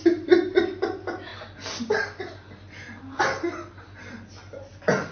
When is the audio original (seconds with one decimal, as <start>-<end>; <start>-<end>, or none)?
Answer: 0.0-5.1